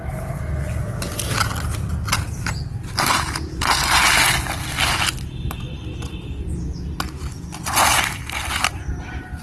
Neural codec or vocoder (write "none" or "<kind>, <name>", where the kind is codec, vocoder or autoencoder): none